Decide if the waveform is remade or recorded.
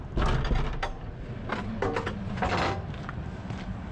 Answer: recorded